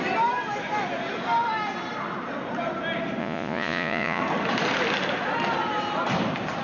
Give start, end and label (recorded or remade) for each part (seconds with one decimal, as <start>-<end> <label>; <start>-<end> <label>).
0.0-3.2 recorded; 3.2-4.2 remade; 4.2-6.6 recorded